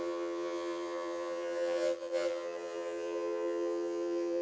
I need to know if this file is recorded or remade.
remade